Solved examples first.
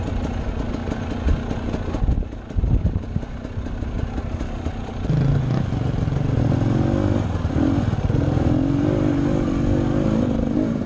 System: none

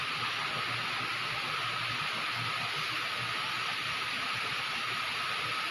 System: none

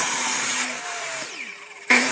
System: vocoder, BigVGAN v2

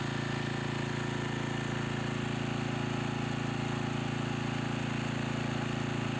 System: none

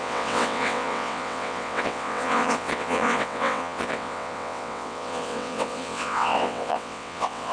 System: vocoder, WaveNeXt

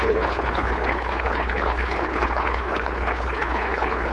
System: codec, HILCodec